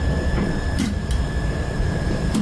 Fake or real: fake